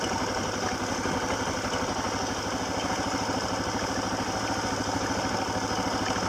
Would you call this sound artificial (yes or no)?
no